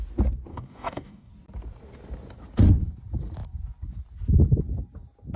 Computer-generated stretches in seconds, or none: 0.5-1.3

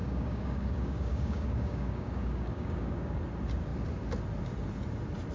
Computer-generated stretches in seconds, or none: 0.0-3.2

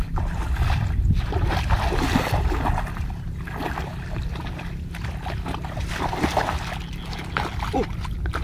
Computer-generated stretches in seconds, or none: none

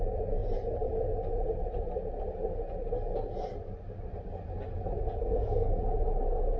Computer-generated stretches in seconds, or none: 5.2-5.8

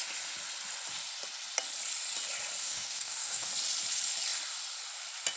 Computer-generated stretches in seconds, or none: 2.6-3.5

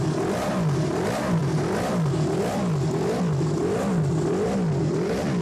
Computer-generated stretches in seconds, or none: none

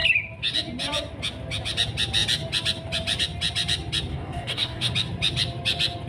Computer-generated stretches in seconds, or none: 4.1-4.9

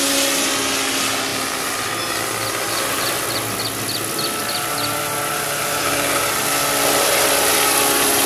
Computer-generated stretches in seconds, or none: none